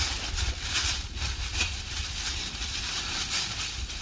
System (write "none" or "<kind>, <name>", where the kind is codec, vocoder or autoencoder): none